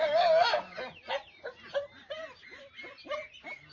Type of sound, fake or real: real